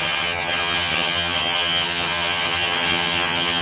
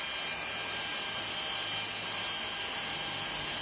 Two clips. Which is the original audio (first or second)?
second